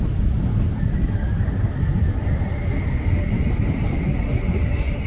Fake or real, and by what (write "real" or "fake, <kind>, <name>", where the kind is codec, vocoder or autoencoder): real